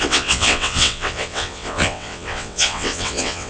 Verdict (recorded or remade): remade